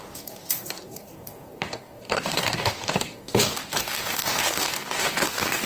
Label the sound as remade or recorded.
remade